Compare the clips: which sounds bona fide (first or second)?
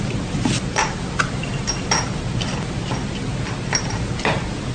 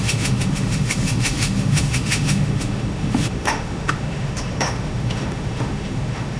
first